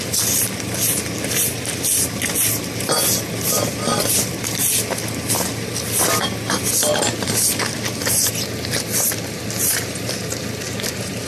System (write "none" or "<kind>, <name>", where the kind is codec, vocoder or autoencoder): none